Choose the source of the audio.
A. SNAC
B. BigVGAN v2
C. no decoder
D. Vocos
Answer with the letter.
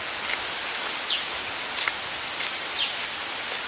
C